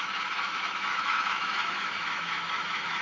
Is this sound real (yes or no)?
no